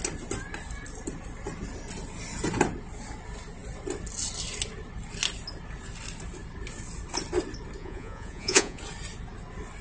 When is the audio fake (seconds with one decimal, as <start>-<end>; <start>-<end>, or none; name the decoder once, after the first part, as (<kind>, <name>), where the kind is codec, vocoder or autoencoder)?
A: 7.8-8.8 (vocoder, Vocos)